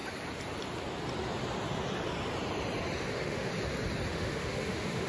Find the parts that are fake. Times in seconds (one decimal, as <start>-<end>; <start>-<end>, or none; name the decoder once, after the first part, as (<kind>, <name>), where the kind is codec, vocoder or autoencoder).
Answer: 3.1-3.5 (autoencoder, DAC-VAE); 4.1-5.1